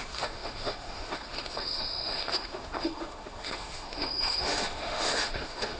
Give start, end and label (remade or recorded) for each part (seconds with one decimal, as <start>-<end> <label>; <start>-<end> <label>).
0.0-5.8 remade

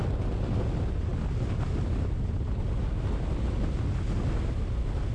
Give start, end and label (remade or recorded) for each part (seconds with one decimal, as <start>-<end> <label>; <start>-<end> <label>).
0.0-5.1 recorded

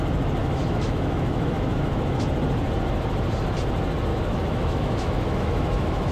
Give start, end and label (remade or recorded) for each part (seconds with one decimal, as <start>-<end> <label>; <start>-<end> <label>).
0.0-0.4 recorded; 0.4-2.2 remade; 2.2-4.1 recorded; 4.1-6.1 remade

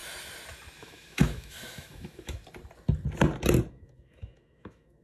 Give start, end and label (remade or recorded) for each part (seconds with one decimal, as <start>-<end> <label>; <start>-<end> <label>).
0.0-0.8 recorded; 0.8-2.4 remade; 2.4-3.7 recorded; 3.7-5.0 remade

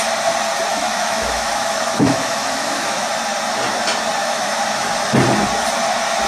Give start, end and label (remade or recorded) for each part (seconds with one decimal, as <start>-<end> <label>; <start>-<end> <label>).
0.0-0.7 recorded; 0.7-3.1 remade; 3.1-4.2 recorded; 4.2-4.9 remade; 4.9-6.3 recorded

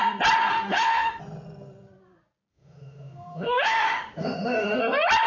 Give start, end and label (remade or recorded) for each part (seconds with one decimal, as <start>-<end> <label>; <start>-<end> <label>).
0.0-0.5 recorded; 0.5-1.2 remade; 1.2-2.5 recorded; 2.5-4.8 remade; 4.8-5.3 recorded

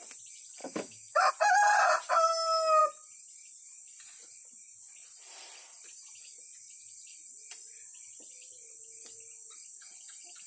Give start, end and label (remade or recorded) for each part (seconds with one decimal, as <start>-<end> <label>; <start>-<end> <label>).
0.0-0.6 recorded; 0.6-1.3 remade; 1.3-10.5 recorded

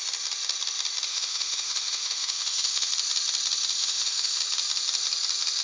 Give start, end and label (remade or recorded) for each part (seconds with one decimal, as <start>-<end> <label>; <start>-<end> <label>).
0.0-1.1 recorded; 1.1-2.9 remade; 2.9-3.8 recorded; 3.8-4.4 remade; 4.4-5.6 recorded